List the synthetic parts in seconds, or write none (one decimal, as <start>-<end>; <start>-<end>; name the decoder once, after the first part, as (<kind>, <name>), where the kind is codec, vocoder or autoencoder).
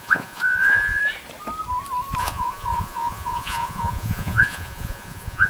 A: 0.0-1.0 (vocoder, Vocos); 2.2-5.5